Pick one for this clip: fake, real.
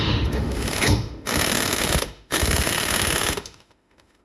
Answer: fake